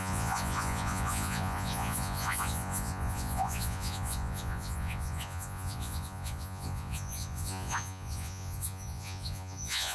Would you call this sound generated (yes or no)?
yes